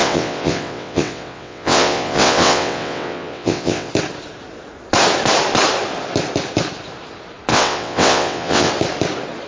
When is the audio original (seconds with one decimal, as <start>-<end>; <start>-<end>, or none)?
3.9-7.5; 8.7-9.5